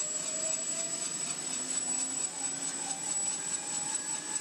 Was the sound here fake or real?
real